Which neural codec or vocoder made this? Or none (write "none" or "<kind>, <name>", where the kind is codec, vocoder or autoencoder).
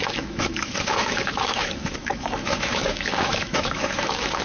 autoencoder, DAC-VAE